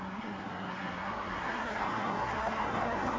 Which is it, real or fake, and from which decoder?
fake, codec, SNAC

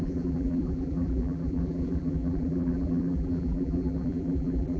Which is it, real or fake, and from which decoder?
fake, vocoder, BigVGAN v2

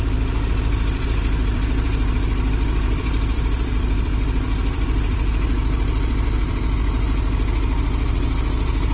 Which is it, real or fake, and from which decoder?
fake, vocoder, BigVGAN v2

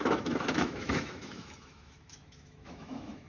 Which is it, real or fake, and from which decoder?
fake, autoencoder, DAC-VAE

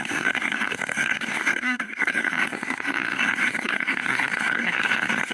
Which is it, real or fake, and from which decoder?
fake, codec, SNAC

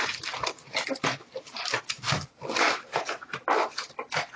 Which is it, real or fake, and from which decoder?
real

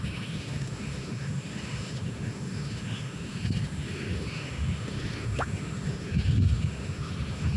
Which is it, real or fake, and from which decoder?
fake, autoencoder, DAC-VAE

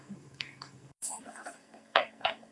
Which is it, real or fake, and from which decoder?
fake, codec, SNAC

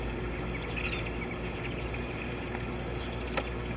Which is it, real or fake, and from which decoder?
real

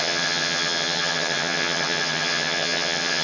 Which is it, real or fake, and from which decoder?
fake, vocoder, HiFi-GAN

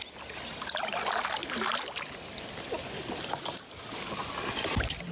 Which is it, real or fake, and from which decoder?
real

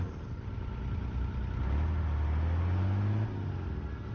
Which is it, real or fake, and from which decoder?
real